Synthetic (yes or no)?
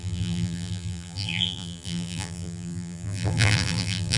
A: yes